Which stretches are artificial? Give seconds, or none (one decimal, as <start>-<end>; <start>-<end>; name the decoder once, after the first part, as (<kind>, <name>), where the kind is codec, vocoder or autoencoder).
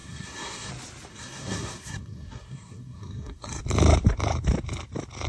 0.0-0.7 (codec, SNAC); 1.1-3.6